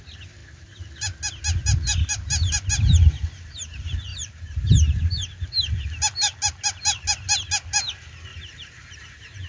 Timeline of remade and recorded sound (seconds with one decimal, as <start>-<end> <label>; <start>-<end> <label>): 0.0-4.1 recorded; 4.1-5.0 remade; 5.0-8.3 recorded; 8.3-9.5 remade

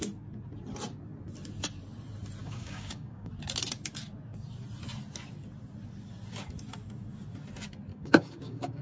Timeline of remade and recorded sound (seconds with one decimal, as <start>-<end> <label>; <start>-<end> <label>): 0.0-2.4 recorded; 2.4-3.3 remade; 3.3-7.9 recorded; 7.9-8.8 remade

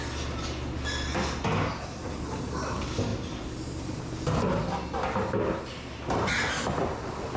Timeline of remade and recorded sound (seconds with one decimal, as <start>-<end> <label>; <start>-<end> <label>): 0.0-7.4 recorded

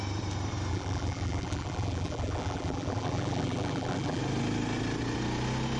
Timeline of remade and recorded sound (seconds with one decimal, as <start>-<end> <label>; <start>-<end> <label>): 0.0-0.7 recorded; 0.7-4.2 remade; 4.2-5.8 recorded

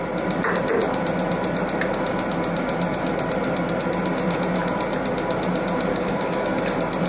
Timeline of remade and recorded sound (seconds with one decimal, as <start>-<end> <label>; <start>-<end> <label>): 0.0-5.9 recorded; 5.9-6.6 remade; 6.6-7.1 recorded

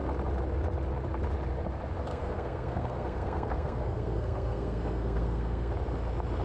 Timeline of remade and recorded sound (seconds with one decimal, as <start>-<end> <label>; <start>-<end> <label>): 0.0-2.1 recorded; 2.1-5.7 remade; 5.7-6.4 recorded